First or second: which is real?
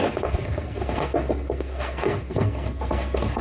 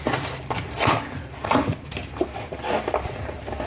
second